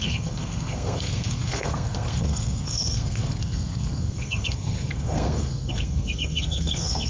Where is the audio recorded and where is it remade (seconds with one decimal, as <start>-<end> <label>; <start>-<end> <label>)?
0.0-7.1 remade